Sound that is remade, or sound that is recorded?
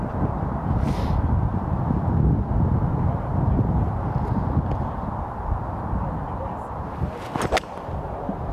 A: recorded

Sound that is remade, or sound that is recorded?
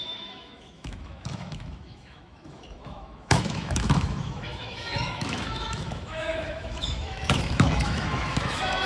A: remade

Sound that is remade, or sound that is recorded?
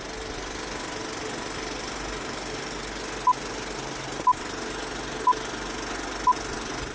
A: recorded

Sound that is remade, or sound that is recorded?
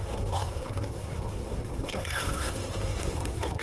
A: remade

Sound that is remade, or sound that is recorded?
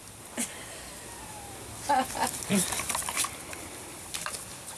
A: recorded